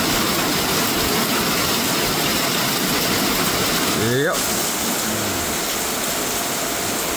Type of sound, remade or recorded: recorded